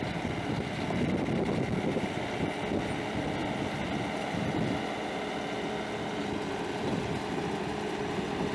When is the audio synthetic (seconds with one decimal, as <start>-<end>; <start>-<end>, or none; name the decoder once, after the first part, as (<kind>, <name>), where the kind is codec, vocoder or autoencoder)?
none